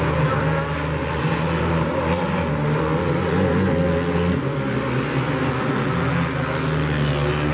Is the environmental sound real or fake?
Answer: real